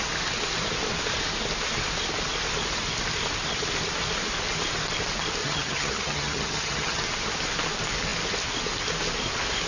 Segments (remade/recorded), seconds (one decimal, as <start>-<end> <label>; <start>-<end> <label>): 0.0-5.4 recorded; 5.4-7.0 remade; 7.0-9.7 recorded